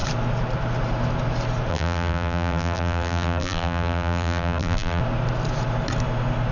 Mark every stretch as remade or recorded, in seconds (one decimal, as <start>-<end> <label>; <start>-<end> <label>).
0.0-1.7 recorded; 1.7-5.0 remade; 5.0-6.5 recorded